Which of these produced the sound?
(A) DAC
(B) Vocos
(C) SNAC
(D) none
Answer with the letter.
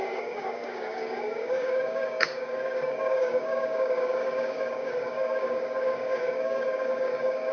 A